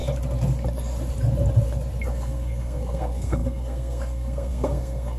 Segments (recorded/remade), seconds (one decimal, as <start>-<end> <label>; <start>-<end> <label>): 0.0-2.1 recorded; 2.1-5.2 remade